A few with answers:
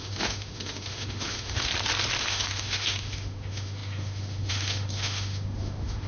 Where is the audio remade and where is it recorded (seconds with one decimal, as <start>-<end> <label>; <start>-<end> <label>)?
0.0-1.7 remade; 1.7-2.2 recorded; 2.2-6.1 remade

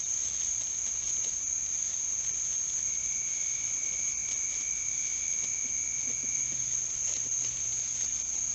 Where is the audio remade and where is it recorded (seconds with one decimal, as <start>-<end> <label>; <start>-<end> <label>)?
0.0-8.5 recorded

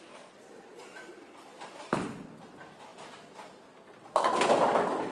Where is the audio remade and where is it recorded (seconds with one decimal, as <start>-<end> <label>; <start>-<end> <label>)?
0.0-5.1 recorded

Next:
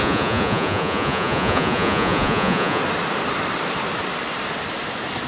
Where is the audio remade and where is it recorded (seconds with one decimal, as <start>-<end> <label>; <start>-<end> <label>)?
0.0-2.8 remade; 2.8-5.3 recorded

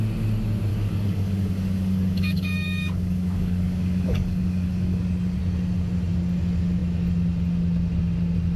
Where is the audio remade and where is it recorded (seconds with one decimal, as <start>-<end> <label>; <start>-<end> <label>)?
0.0-0.7 recorded; 0.7-5.0 remade; 5.0-8.6 recorded